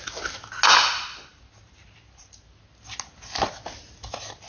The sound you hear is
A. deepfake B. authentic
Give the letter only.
B